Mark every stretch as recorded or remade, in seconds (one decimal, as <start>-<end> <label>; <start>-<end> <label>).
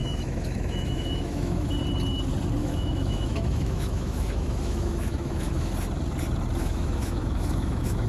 0.0-1.7 remade; 1.7-2.6 recorded; 2.6-5.7 remade; 5.7-6.6 recorded; 6.6-8.1 remade